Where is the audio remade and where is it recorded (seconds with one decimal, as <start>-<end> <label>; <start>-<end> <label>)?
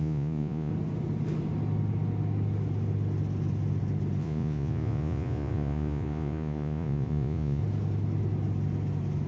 0.0-0.7 remade; 0.7-4.2 recorded; 4.2-7.6 remade; 7.6-9.3 recorded